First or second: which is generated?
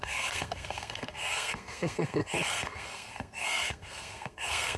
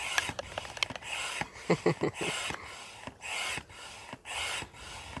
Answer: first